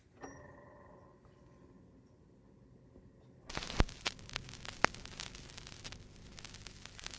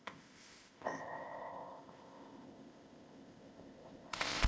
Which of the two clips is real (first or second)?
first